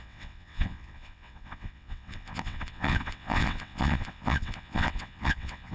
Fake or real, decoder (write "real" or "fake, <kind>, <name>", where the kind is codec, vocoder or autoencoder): fake, vocoder, WaveNeXt